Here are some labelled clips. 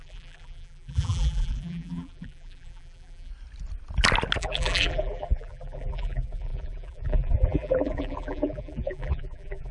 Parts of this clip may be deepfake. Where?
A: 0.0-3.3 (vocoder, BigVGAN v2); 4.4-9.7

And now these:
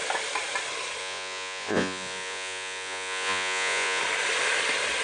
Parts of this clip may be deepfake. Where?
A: 1.0-4.0 (vocoder, Vocos)